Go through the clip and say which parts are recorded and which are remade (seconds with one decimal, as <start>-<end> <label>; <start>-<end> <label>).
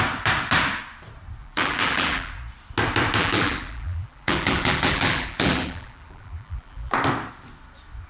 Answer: 0.0-1.4 recorded; 1.4-2.3 remade; 2.3-3.2 recorded; 3.2-6.9 remade; 6.9-8.1 recorded